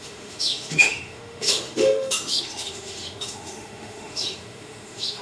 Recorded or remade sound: remade